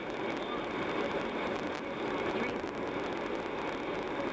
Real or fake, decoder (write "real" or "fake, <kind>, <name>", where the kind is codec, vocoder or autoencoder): real